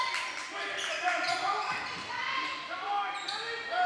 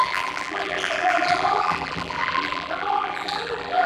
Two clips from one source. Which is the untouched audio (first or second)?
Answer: first